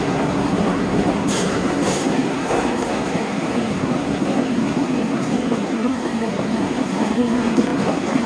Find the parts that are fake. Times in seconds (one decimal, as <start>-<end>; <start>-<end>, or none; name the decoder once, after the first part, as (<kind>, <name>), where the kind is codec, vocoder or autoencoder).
0.0-8.3 (codec, SNAC)